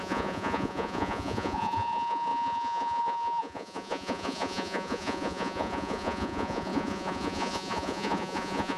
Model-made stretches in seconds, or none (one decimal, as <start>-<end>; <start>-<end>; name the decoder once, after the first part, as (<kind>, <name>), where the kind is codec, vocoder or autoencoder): 0.0-8.8 (vocoder, Vocos)